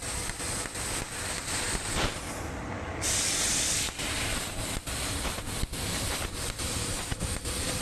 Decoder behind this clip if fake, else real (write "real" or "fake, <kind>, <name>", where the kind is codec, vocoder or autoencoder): real